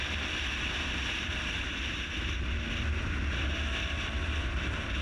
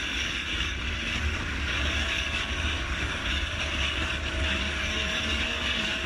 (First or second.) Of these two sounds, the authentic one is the first